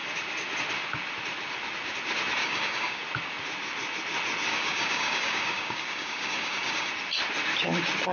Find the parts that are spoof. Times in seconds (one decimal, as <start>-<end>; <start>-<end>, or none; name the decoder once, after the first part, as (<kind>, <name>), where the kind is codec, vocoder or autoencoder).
2.4-3.0 (codec, DAC); 4.5-6.9